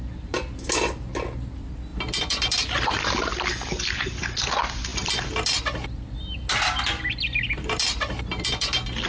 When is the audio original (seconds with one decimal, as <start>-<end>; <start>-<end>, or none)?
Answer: 0.0-9.1